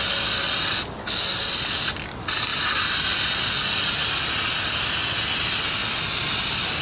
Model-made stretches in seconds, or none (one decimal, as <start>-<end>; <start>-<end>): none